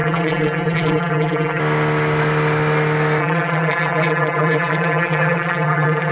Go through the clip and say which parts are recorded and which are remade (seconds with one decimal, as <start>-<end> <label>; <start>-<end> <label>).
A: 0.0-1.6 remade; 1.6-3.2 recorded; 3.2-6.1 remade